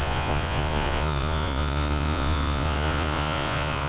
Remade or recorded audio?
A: remade